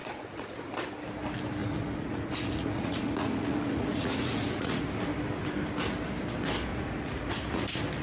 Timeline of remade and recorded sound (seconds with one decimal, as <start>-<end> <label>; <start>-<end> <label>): 0.0-0.7 remade; 0.7-1.6 recorded; 1.6-4.8 remade; 4.8-6.7 recorded; 6.7-7.3 remade; 7.3-8.0 recorded